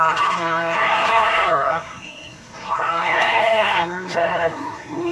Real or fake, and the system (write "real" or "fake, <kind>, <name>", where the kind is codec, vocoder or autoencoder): fake, codec, SNAC